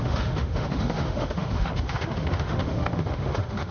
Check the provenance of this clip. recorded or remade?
remade